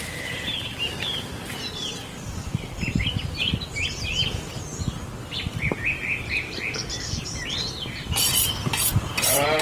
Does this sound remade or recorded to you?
remade